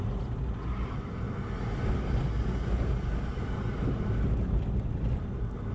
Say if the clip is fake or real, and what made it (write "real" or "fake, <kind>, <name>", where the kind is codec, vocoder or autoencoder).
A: real